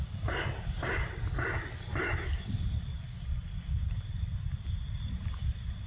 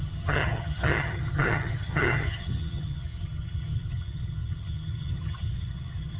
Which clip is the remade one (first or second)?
second